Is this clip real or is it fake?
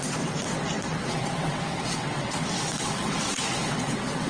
fake